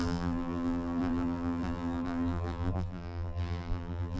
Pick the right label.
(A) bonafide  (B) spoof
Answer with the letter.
B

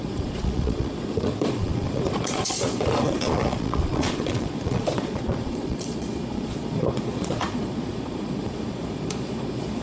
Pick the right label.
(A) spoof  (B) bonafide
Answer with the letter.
A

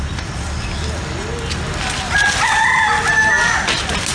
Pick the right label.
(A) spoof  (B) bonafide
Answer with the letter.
B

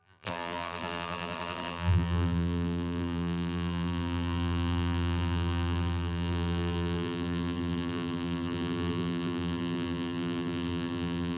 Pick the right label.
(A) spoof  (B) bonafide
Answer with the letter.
A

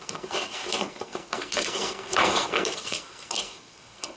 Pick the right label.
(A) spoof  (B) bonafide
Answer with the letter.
A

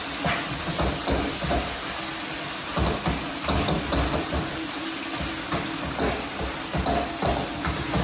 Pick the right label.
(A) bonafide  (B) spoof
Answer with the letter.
A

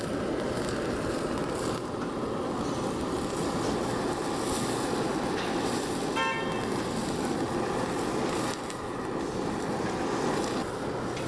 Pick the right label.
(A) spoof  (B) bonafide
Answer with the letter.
B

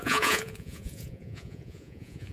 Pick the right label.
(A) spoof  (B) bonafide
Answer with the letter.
A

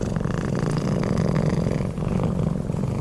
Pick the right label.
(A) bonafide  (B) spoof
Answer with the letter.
A